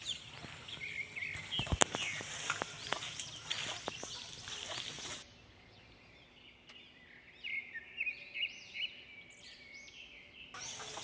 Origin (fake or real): real